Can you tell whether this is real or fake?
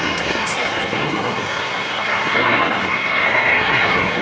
fake